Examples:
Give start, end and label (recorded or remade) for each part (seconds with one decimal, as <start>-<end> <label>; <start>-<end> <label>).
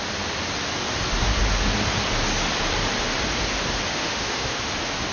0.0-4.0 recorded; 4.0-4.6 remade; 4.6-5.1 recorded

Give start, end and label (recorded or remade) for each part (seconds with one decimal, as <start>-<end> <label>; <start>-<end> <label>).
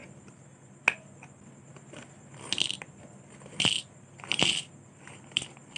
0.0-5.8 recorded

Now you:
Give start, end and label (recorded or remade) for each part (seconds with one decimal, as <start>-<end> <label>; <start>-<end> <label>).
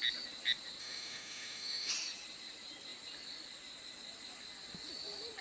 0.0-0.8 recorded; 0.8-1.9 remade; 1.9-5.4 recorded